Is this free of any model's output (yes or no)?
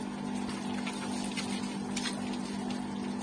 yes